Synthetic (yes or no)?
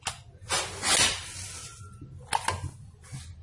no